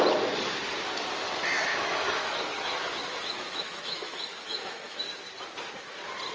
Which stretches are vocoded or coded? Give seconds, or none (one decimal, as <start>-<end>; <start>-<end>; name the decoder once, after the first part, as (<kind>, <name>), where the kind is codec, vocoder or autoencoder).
1.7-5.0 (autoencoder, DAC-VAE)